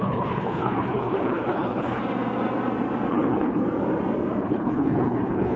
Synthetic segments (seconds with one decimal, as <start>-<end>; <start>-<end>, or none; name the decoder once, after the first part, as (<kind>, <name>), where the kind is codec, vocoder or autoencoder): 0.0-2.0 (codec, HILCodec); 3.1-3.6; 4.4-5.6